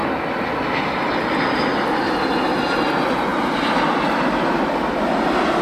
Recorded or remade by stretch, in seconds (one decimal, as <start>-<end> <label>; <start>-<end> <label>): 0.0-5.6 recorded

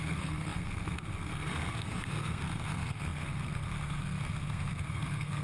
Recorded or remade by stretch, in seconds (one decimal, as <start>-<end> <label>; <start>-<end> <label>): 0.0-5.4 remade